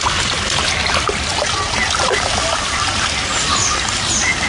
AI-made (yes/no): no